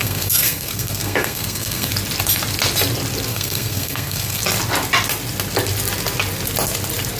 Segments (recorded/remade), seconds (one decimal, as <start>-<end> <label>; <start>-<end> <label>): 0.0-1.9 remade; 1.9-3.3 recorded; 3.3-4.4 remade; 4.4-7.2 recorded